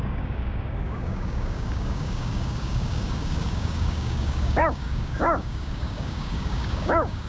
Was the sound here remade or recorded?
remade